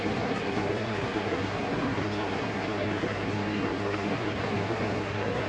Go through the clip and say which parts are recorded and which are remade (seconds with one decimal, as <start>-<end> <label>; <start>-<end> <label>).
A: 0.0-5.5 remade